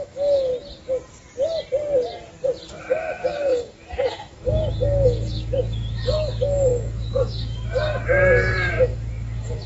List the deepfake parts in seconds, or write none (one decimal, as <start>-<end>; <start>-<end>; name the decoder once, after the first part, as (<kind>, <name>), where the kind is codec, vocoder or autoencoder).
0.0-0.5 (autoencoder, DAC-VAE); 2.9-9.7